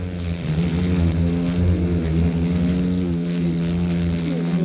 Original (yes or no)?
yes